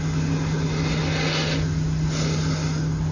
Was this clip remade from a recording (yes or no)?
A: no